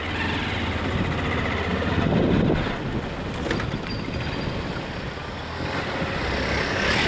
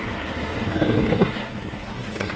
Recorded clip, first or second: first